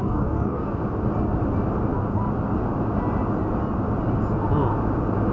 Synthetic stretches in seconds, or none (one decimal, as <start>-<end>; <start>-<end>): 0.0-0.8